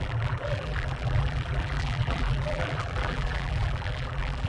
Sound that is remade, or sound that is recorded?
remade